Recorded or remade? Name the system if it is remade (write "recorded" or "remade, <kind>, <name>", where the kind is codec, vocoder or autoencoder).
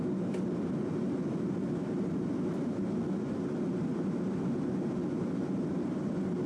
recorded